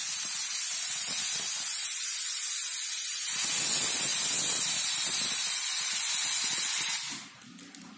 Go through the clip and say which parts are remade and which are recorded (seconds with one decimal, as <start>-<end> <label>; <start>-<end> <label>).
0.0-8.0 recorded